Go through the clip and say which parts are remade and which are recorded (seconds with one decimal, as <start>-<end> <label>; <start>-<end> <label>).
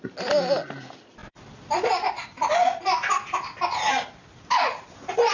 0.0-5.3 recorded